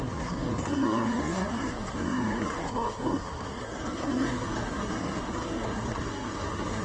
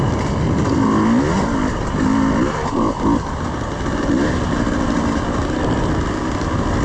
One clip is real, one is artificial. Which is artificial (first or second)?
first